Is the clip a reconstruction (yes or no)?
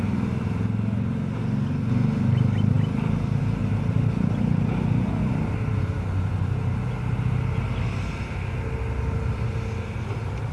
no